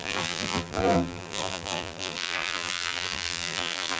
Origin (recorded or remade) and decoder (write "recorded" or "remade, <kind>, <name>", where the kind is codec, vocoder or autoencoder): remade, vocoder, BigVGAN v2